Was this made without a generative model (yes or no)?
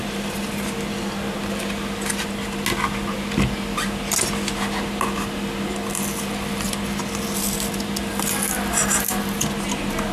yes